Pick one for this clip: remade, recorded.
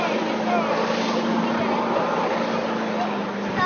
recorded